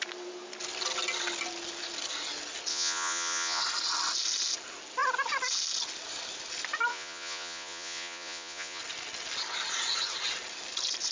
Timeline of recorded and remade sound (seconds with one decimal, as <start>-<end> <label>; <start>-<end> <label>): 0.0-2.7 recorded; 2.7-3.6 remade; 3.6-6.9 recorded; 6.9-8.8 remade; 8.8-11.1 recorded